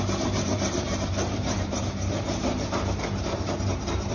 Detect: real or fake fake